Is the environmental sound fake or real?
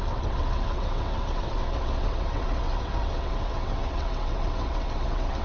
fake